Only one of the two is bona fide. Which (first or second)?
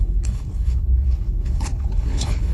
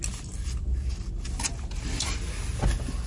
second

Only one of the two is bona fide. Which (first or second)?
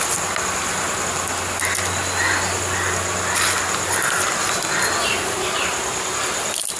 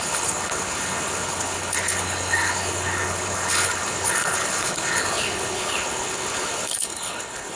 first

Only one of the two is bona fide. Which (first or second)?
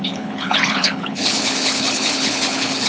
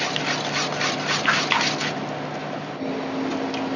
second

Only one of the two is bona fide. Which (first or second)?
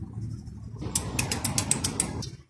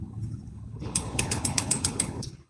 first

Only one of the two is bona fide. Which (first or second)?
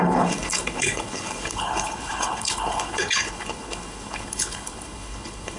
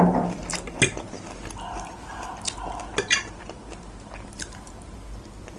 second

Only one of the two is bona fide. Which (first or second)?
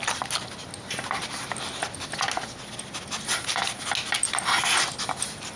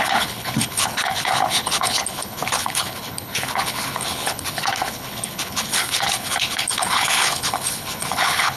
first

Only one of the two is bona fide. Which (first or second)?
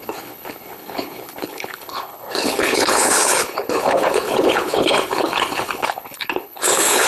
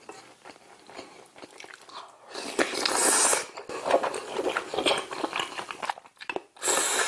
second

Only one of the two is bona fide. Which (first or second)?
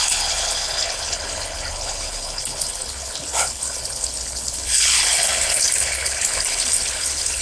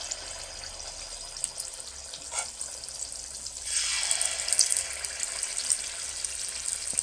second